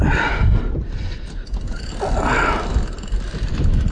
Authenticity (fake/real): real